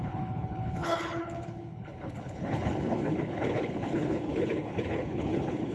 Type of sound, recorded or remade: remade